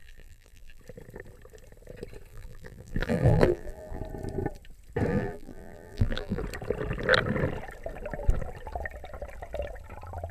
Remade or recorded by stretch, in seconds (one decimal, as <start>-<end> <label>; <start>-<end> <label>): 0.0-0.8 remade; 0.8-2.3 recorded; 2.3-4.0 remade; 4.0-5.1 recorded; 5.1-6.4 remade; 6.4-10.3 recorded